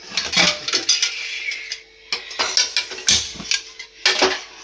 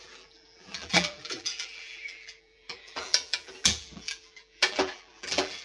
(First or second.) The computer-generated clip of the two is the second